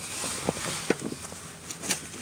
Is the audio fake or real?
real